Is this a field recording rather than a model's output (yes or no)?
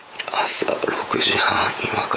no